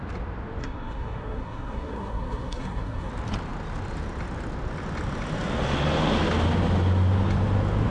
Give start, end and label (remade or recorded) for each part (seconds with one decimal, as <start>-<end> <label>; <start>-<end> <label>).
0.0-0.6 recorded; 0.6-3.1 remade; 3.1-7.9 recorded